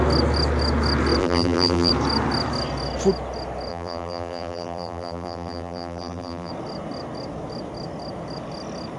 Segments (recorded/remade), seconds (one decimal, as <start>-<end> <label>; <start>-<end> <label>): 0.0-1.2 recorded; 1.2-1.9 remade; 1.9-3.7 recorded; 3.7-6.5 remade; 6.5-9.0 recorded